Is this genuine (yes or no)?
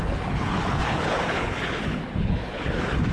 no